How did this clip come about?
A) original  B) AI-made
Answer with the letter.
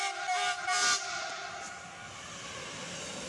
A